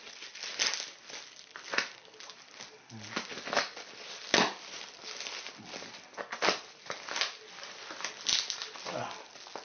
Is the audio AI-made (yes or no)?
no